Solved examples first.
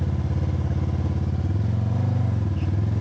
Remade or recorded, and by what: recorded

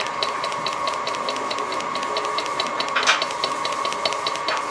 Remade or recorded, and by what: recorded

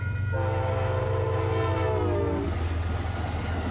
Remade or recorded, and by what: recorded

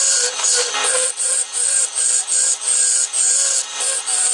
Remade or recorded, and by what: recorded